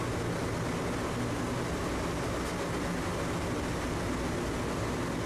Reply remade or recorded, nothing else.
recorded